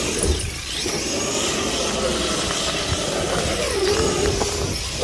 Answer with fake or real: real